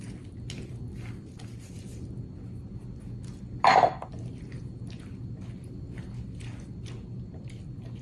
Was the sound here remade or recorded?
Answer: recorded